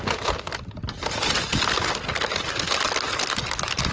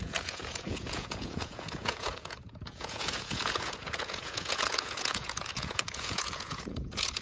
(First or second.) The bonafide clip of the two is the first